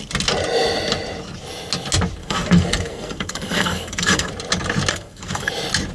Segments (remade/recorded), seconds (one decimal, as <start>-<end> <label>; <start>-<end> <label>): 0.0-2.2 recorded; 2.2-4.3 remade; 4.3-4.9 recorded; 4.9-5.5 remade; 5.5-5.9 recorded